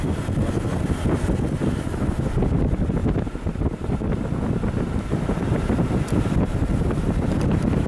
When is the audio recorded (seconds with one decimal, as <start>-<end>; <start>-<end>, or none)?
0.0-7.9